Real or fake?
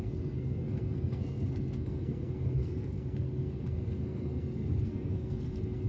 fake